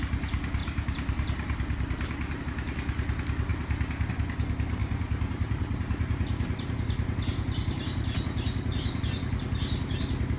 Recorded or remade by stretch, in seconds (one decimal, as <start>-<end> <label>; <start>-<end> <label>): 0.0-0.6 recorded; 0.6-2.4 remade; 2.4-4.8 recorded; 4.8-9.0 remade; 9.0-10.4 recorded